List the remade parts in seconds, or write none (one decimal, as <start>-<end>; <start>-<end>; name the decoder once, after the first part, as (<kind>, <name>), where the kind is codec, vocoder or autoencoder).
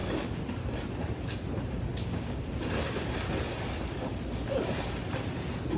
1.9-2.4 (codec, DAC)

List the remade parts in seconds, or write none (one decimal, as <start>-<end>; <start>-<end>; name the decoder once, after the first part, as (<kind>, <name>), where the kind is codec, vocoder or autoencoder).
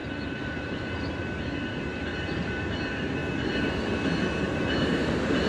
0.0-3.2 (vocoder, BigVGAN v2); 4.4-5.5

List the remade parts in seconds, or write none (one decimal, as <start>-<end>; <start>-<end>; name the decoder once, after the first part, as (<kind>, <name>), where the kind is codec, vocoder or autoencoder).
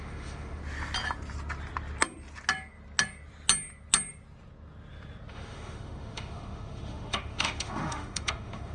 0.0-0.6 (autoencoder, DAC-VAE); 5.3-8.7